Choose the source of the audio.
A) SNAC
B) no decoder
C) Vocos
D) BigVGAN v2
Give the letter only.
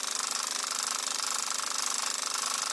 B